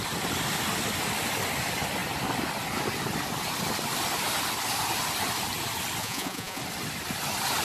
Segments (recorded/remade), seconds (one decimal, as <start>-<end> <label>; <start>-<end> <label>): 0.0-6.0 recorded; 6.0-6.6 remade; 6.6-7.6 recorded